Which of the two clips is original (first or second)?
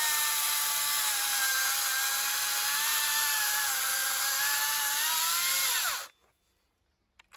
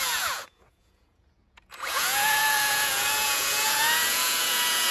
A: first